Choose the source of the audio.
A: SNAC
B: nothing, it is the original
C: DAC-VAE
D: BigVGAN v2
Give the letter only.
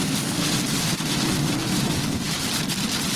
D